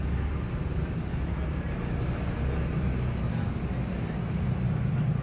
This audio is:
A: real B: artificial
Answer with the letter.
A